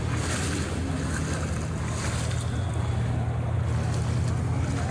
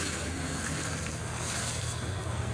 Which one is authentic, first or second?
first